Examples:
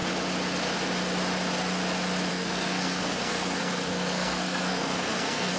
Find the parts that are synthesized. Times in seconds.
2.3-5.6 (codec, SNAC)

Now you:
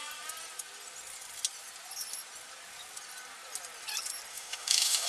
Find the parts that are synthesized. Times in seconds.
4.3-5.1 (autoencoder, DAC-VAE)

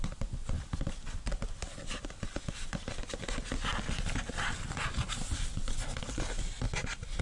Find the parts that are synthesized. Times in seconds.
0.4-1.3 (vocoder, BigVGAN v2); 3.7-4.3